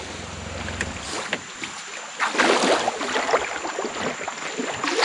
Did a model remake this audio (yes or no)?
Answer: no